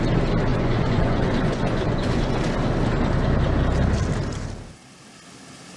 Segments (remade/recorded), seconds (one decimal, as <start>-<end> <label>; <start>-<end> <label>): 0.0-0.5 recorded; 0.5-2.4 remade; 2.4-5.8 recorded